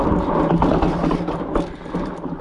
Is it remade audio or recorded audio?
recorded